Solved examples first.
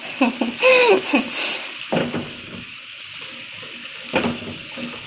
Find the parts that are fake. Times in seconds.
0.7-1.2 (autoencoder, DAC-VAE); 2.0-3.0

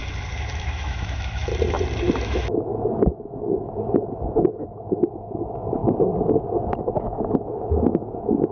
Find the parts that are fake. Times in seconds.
0.5-1.5 (autoencoder, DAC-VAE); 2.2-5.8; 6.7-8.5

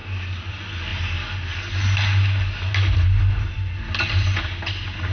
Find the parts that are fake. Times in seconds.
none